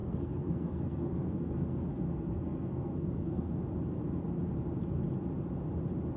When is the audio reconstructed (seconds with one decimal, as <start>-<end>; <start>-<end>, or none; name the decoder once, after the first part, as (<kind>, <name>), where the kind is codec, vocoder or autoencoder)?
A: 0.0-3.6 (codec, SNAC)

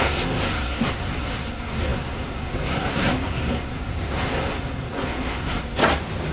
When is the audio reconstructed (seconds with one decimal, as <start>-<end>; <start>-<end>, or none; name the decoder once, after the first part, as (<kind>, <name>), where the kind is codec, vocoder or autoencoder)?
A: 0.0-5.8 (codec, SNAC)